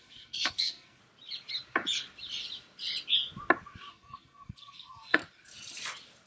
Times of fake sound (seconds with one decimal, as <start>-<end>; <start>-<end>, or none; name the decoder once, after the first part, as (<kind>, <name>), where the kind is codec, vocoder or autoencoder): 0.0-1.0 (codec, SNAC); 3.9-5.2